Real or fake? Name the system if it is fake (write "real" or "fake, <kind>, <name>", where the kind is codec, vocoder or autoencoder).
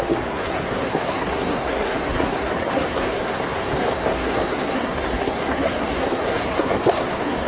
fake, codec, SNAC